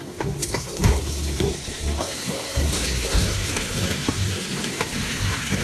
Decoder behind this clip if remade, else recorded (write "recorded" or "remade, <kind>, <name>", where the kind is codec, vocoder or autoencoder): remade, codec, SNAC